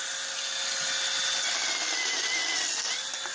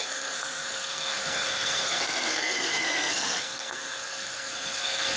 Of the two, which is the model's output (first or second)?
second